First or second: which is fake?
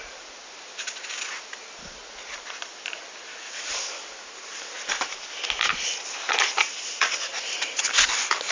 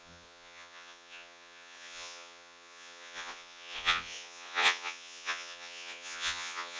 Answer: second